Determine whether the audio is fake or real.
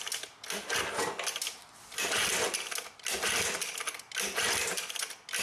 real